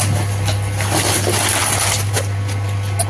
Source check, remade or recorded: recorded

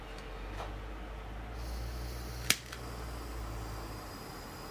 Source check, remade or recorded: recorded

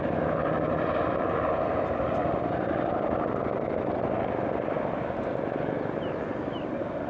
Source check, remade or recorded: recorded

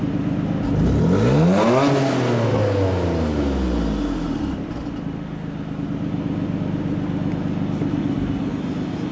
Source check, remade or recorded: recorded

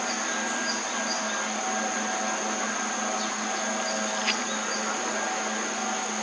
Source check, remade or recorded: recorded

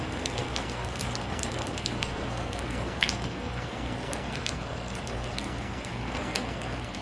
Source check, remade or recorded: remade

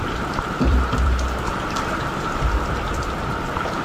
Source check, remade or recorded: remade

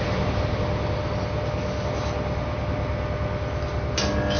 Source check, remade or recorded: recorded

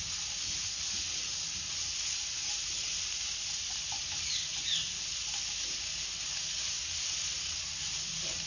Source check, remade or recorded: recorded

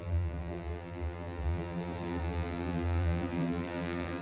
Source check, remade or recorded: remade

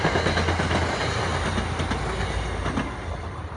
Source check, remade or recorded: recorded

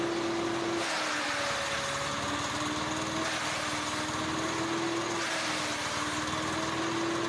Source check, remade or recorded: recorded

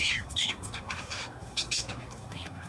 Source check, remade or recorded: remade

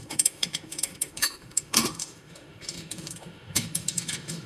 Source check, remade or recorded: remade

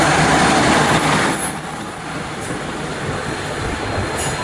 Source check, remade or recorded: recorded